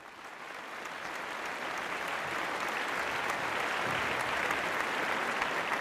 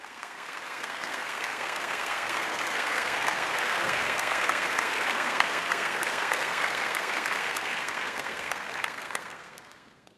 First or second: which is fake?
second